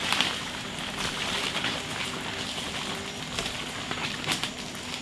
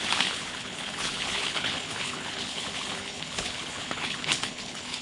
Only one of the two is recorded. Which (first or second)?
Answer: first